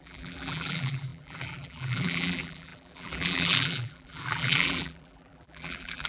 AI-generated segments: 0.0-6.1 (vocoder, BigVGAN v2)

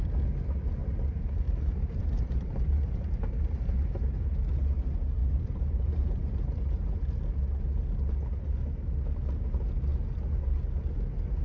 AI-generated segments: 0.8-4.4 (vocoder, BigVGAN v2); 5.2-7.0

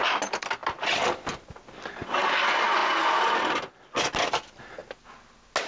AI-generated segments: none

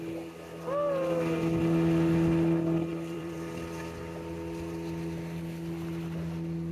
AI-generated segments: 2.9-4.0 (vocoder, BigVGAN v2)

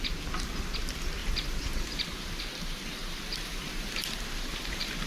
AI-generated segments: 1.2-2.4 (vocoder, BigVGAN v2); 3.0-5.1

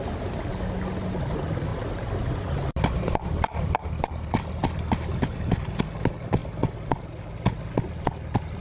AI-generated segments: 1.7-5.8 (vocoder, BigVGAN v2)

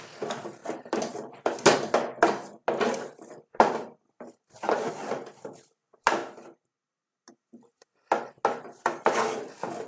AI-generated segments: none